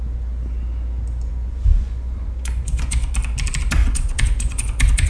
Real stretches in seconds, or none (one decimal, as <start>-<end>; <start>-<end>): 0.0-1.3; 3.1-3.8